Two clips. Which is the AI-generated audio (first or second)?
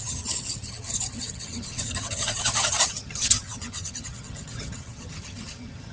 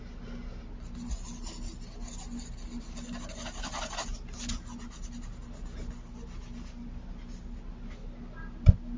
first